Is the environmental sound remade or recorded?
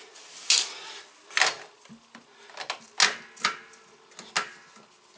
recorded